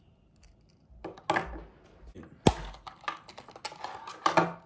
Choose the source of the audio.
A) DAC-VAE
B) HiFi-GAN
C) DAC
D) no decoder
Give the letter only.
D